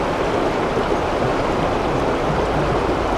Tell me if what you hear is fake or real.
real